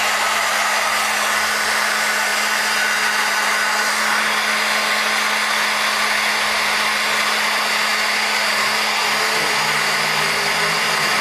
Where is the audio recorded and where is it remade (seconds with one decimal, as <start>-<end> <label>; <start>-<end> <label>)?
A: 0.0-11.2 recorded